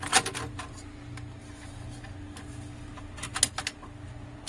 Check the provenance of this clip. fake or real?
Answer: real